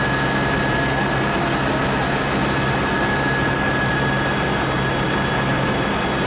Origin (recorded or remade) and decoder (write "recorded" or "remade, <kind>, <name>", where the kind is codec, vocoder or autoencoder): recorded